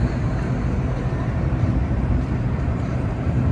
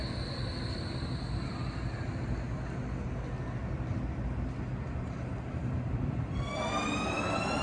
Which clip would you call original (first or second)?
second